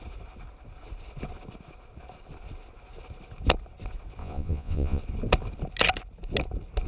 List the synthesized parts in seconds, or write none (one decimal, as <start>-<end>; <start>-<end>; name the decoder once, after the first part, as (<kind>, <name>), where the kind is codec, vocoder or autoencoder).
4.2-5.0 (vocoder, Vocos)